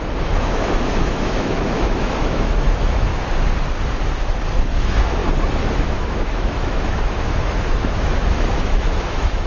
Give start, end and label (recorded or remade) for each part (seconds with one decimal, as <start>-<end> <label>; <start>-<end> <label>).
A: 0.0-3.1 remade; 3.1-4.7 recorded; 4.7-5.2 remade; 5.2-5.7 recorded; 5.7-9.5 remade